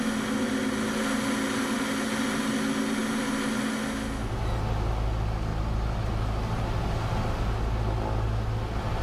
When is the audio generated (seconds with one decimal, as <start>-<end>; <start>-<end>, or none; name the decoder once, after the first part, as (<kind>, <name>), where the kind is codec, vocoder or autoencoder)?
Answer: none